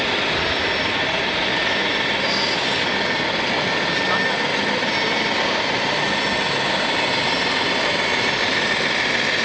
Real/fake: real